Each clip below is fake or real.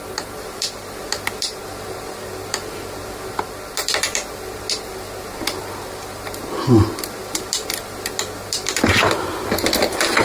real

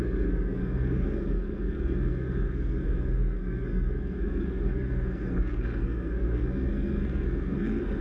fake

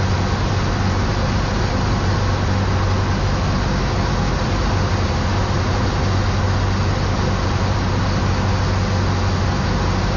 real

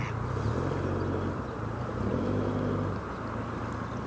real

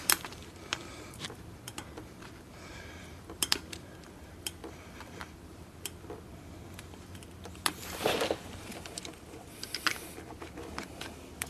fake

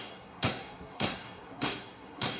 fake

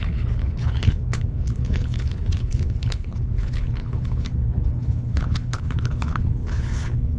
fake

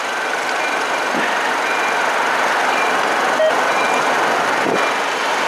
real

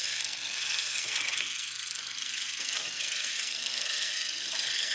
fake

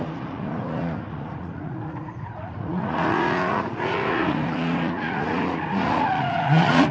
fake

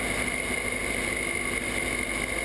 real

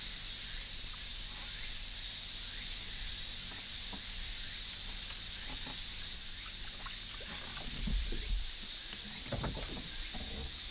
real